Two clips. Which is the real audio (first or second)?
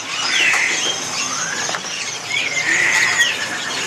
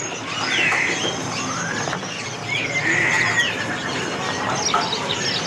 second